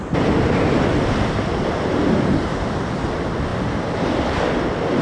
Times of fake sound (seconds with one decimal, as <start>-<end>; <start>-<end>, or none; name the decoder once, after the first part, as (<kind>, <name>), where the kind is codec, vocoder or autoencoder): none